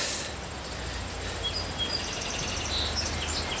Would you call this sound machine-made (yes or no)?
no